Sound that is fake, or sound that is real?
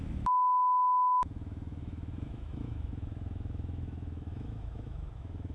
fake